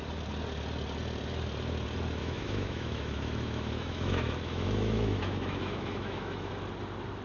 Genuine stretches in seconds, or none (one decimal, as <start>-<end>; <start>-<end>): 0.0-2.2; 6.5-7.2